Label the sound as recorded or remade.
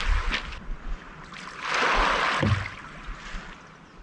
recorded